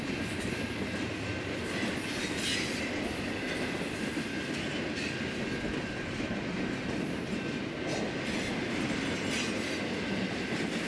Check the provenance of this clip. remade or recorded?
recorded